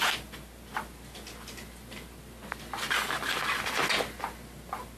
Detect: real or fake real